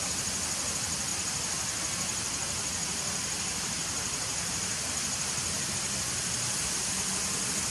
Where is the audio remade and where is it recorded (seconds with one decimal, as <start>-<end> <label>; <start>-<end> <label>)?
0.0-1.1 recorded; 1.1-5.7 remade; 5.7-7.7 recorded

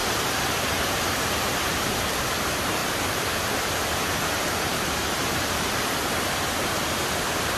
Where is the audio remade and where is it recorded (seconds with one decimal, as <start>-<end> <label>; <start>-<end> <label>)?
0.0-0.6 recorded; 0.6-2.8 remade; 2.8-4.2 recorded; 4.2-7.6 remade

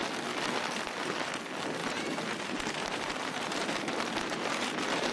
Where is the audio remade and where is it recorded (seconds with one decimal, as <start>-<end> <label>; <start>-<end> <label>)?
0.0-1.8 recorded; 1.8-5.1 remade

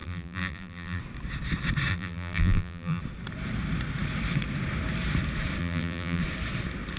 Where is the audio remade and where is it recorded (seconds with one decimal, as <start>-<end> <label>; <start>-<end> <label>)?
0.0-1.0 remade; 1.0-1.9 recorded; 1.9-3.0 remade; 3.0-5.6 recorded; 5.6-6.2 remade; 6.2-7.0 recorded

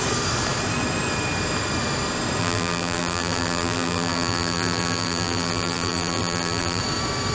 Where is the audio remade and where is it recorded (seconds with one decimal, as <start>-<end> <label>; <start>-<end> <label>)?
0.0-2.4 recorded; 2.4-6.8 remade; 6.8-7.3 recorded